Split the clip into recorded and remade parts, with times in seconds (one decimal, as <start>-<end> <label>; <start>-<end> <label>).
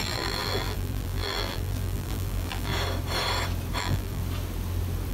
0.0-2.7 remade; 2.7-3.8 recorded; 3.8-4.2 remade; 4.2-5.1 recorded